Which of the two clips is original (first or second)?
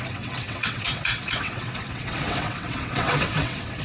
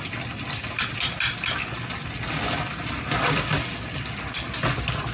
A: second